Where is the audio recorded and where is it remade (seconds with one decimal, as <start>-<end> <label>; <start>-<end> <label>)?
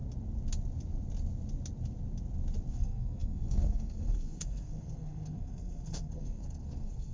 0.0-2.7 recorded; 2.7-7.1 remade